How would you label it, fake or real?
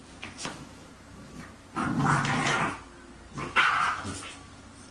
real